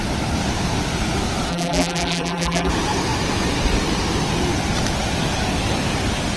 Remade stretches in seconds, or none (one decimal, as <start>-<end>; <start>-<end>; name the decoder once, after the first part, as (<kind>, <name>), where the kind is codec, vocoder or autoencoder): 1.5-2.7 (vocoder, BigVGAN v2)